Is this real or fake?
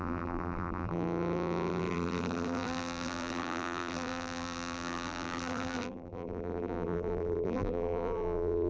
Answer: fake